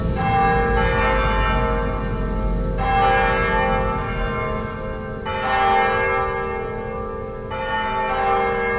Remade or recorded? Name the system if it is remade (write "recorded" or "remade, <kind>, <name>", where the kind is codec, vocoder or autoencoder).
recorded